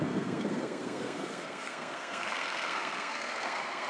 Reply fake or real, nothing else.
fake